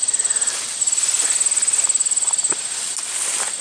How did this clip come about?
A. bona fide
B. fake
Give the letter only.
A